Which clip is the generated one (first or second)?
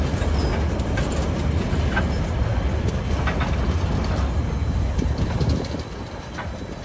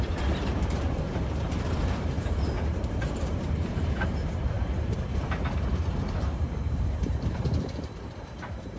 second